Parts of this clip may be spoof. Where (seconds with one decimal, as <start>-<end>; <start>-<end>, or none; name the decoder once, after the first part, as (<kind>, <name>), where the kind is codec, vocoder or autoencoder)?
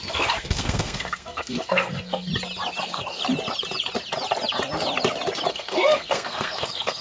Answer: 0.0-2.3 (codec, SNAC); 2.8-3.2; 5.5-7.0